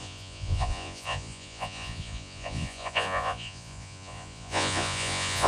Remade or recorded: remade